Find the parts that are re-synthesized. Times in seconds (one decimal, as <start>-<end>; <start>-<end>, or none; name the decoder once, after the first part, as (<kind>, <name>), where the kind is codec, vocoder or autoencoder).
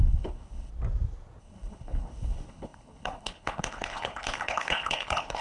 0.0-0.7 (codec, HILCodec); 1.4-5.4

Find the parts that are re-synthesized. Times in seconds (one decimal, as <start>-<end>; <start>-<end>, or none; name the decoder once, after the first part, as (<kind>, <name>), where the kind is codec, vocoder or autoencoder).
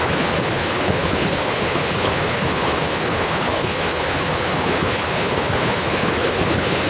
0.0-6.9 (codec, HILCodec)